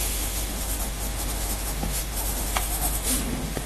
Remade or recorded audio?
remade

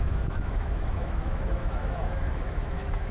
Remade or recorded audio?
remade